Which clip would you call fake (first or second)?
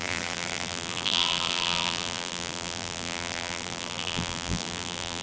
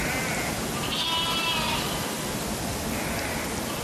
first